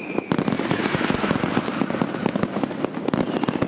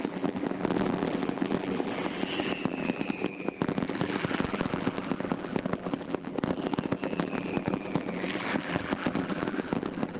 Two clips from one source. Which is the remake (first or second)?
second